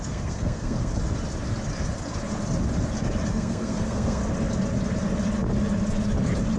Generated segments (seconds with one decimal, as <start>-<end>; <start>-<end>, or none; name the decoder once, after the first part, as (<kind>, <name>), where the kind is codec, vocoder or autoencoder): 0.0-0.9 (codec, SNAC); 3.3-4.2